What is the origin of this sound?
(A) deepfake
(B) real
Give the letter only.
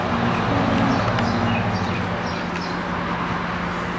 B